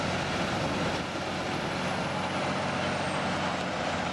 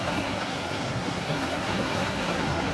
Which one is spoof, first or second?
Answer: second